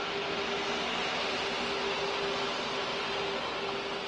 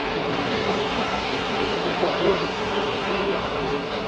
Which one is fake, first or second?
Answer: second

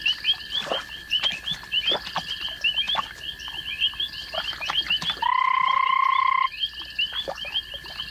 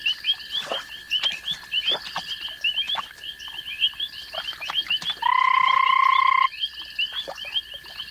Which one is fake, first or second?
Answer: first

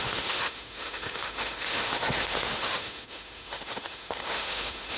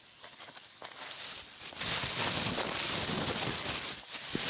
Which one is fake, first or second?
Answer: first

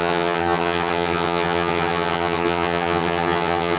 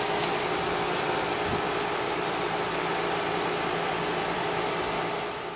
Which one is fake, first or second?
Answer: first